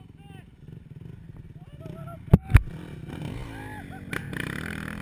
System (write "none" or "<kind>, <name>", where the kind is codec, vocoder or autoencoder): none